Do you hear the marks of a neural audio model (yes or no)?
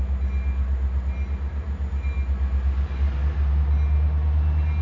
no